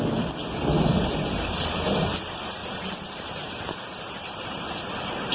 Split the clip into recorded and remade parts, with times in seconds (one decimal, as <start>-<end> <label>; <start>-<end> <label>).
0.0-0.9 recorded; 0.9-1.7 remade; 1.7-2.6 recorded; 2.6-3.7 remade; 3.7-4.2 recorded; 4.2-5.3 remade